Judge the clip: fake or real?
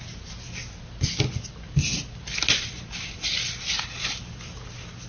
real